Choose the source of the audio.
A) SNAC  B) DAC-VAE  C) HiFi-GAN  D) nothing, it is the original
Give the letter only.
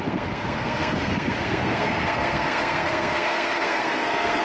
A